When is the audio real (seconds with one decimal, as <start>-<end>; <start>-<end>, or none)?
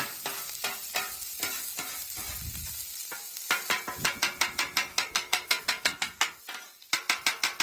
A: 0.0-4.9; 6.4-7.6